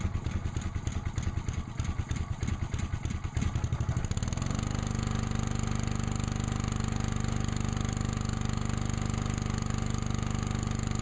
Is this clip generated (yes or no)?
no